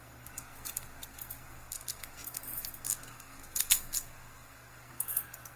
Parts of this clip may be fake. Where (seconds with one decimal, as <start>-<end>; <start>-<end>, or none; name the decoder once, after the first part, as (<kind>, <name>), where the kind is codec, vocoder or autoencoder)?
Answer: 0.0-5.6 (codec, SNAC)